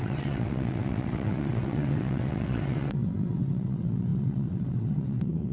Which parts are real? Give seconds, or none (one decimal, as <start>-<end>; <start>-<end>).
none